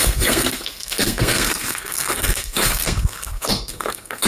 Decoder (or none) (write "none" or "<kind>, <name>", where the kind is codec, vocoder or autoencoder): codec, SNAC